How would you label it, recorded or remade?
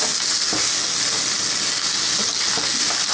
recorded